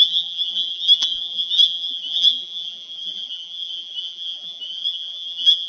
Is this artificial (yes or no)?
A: yes